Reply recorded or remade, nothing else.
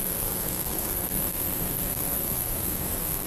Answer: remade